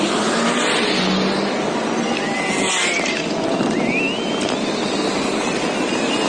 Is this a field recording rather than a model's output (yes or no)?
yes